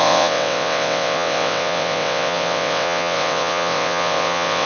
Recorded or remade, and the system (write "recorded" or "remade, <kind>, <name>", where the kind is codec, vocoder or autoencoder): remade, vocoder, WaveNeXt